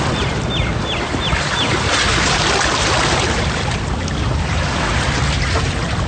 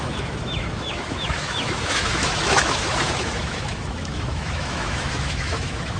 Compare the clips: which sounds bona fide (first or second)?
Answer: first